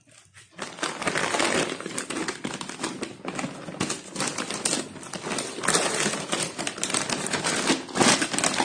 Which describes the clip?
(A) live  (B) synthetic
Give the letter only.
A